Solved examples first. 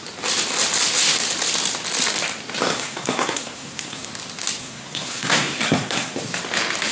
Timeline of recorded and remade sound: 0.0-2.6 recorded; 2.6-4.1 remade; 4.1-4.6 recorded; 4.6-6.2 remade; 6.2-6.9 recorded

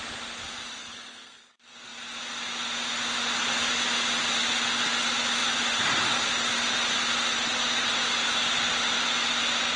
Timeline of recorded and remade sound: 0.0-0.8 recorded; 0.8-1.5 remade; 1.5-9.8 recorded

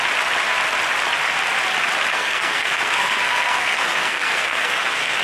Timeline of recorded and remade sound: 0.0-2.1 recorded; 2.1-5.2 remade

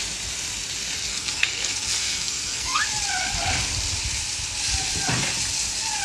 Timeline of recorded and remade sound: 0.0-1.1 recorded; 1.1-2.8 remade; 2.8-6.0 recorded

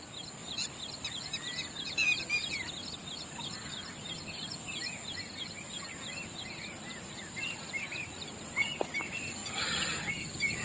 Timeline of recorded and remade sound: 0.0-10.6 recorded

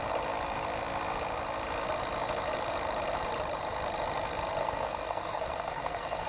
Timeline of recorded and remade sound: 0.0-4.6 recorded; 4.6-6.3 remade

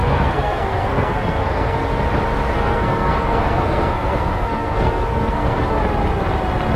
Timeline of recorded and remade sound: 0.0-1.8 remade; 1.8-2.5 recorded; 2.5-5.8 remade; 5.8-6.8 recorded

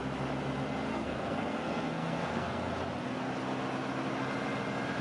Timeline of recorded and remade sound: 0.0-0.9 recorded; 0.9-2.7 remade; 2.7-5.0 recorded